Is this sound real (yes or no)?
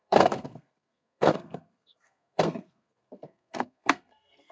no